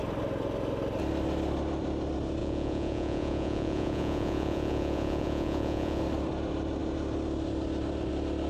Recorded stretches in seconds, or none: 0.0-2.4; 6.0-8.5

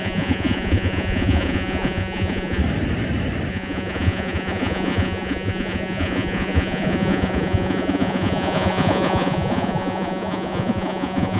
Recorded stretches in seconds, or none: 2.6-3.5